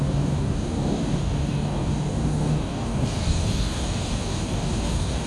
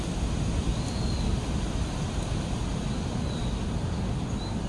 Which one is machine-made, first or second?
first